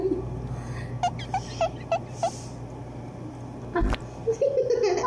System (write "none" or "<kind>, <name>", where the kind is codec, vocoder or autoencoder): none